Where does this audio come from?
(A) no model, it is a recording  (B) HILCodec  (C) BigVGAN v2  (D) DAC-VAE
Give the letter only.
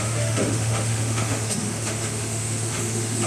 D